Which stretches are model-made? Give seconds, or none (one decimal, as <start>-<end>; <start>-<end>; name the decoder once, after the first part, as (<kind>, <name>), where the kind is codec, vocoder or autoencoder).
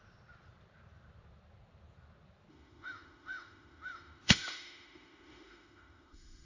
2.5-6.5 (autoencoder, DAC-VAE)